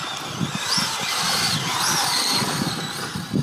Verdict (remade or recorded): recorded